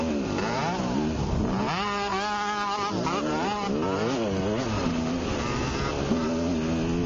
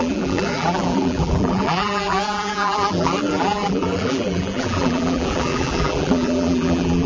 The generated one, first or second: second